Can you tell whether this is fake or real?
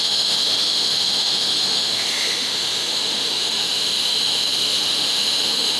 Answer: fake